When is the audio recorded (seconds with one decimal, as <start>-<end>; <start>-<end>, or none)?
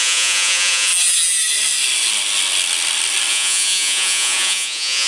0.9-3.3